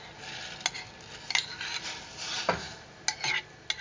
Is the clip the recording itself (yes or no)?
yes